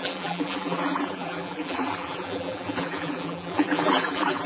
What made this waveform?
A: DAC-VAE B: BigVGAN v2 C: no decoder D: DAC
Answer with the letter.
B